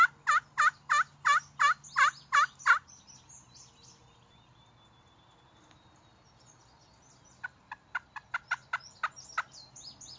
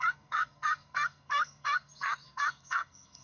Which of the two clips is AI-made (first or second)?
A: second